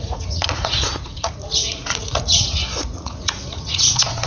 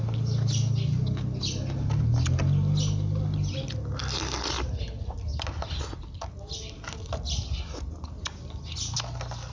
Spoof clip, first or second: first